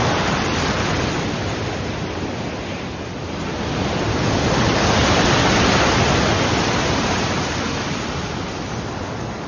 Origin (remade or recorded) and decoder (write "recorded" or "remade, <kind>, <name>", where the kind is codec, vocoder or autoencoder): recorded